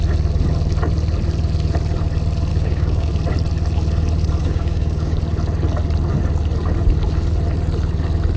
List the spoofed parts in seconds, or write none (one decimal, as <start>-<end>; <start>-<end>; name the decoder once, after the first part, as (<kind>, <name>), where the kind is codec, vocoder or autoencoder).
2.5-3.1 (codec, DAC); 4.4-5.2